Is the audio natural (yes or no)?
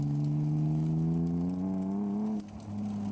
yes